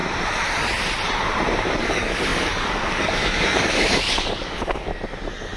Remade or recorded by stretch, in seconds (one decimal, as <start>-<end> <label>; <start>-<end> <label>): 0.0-1.8 recorded; 1.8-4.9 remade; 4.9-5.6 recorded